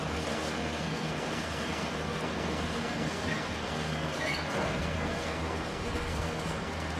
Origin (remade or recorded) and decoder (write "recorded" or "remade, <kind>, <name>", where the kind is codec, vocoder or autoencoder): remade, codec, SNAC